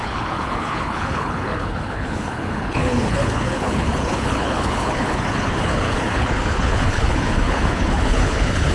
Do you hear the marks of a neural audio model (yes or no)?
yes